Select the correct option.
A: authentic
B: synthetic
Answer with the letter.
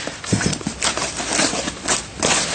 A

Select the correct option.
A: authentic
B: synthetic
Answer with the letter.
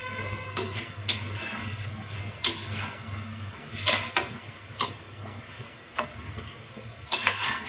B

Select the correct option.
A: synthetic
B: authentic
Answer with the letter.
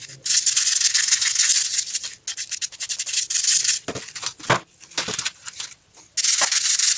B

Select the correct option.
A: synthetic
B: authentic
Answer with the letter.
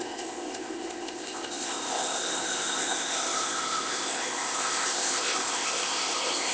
A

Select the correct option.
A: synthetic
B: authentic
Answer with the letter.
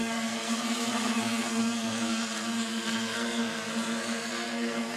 A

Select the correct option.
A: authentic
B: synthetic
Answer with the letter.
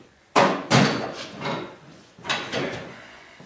B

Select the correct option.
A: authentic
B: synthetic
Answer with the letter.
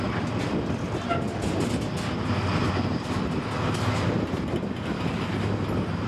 A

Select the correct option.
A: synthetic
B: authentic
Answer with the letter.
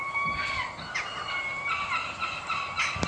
B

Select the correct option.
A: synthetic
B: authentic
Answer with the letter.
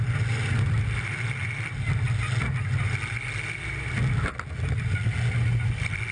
B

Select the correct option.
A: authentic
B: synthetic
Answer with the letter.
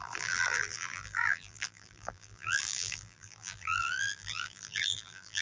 B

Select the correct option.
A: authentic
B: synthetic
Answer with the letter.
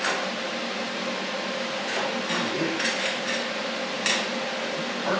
A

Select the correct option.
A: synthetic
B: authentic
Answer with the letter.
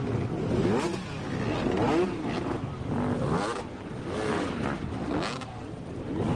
B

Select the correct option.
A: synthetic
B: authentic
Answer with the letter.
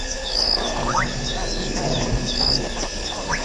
A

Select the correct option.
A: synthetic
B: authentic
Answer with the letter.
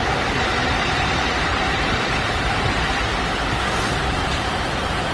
A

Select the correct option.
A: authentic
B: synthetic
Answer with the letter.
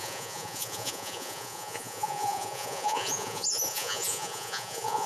B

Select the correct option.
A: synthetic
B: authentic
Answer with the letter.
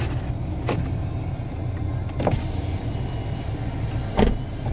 B